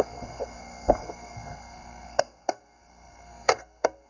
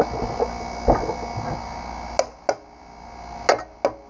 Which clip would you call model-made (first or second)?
first